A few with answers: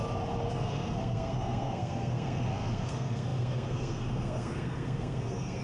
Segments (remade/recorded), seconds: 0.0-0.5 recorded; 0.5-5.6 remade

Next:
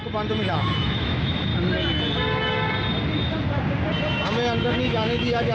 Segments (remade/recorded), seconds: 0.0-0.5 recorded; 0.5-1.5 remade; 1.5-4.8 recorded; 4.8-5.5 remade

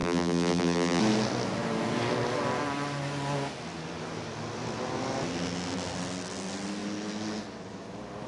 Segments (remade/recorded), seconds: 0.0-1.0 remade; 1.0-8.3 recorded

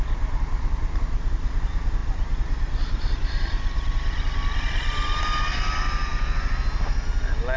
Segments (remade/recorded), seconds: 0.0-2.0 recorded; 2.0-4.4 remade; 4.4-6.1 recorded; 6.1-6.6 remade; 6.6-7.6 recorded

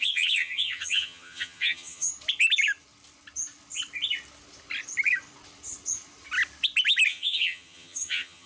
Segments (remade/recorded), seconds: 0.0-2.1 remade; 2.1-7.1 recorded; 7.1-8.5 remade

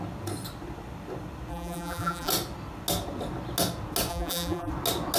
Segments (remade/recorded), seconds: 0.0-1.5 recorded; 1.5-2.3 remade; 2.3-4.1 recorded; 4.1-4.7 remade; 4.7-5.2 recorded